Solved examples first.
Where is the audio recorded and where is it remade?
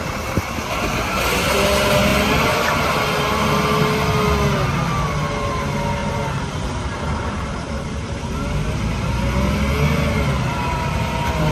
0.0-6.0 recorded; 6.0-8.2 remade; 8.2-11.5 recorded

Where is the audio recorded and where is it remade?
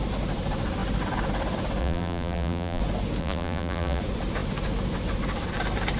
0.0-1.8 recorded; 1.8-2.8 remade; 2.8-3.2 recorded; 3.2-4.0 remade; 4.0-6.0 recorded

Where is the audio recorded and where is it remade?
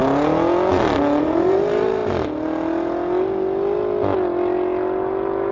0.0-1.2 recorded; 1.2-2.0 remade; 2.0-5.5 recorded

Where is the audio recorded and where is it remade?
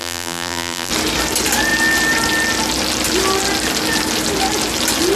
0.0-0.9 remade; 0.9-5.2 recorded